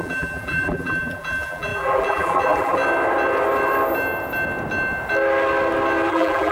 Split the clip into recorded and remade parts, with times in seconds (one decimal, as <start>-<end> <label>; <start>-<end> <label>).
0.0-2.8 remade; 2.8-6.1 recorded; 6.1-6.5 remade